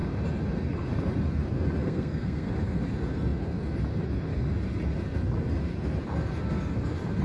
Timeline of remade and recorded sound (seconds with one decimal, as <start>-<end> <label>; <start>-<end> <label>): 0.0-1.8 recorded; 1.8-2.5 remade; 2.5-7.2 recorded